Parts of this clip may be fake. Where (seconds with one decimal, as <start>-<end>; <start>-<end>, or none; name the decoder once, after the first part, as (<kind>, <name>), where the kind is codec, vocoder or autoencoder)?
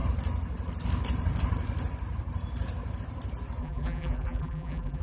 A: 3.6-5.0 (vocoder, BigVGAN v2)